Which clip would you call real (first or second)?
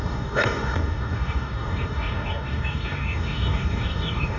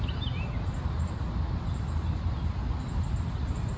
second